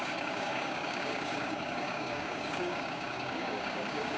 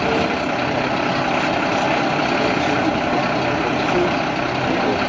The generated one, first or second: first